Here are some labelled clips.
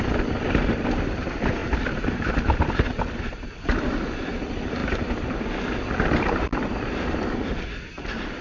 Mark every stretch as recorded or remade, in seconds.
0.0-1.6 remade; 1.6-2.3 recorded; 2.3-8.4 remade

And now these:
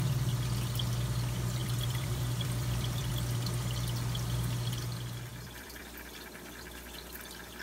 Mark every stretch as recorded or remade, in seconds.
0.0-1.6 recorded; 1.6-3.1 remade; 3.1-5.3 recorded; 5.3-5.8 remade; 5.8-7.6 recorded

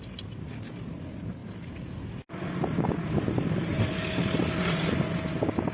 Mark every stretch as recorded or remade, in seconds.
0.0-5.7 recorded